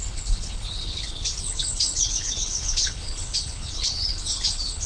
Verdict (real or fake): fake